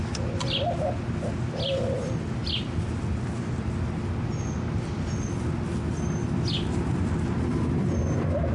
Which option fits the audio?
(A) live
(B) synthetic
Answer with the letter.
A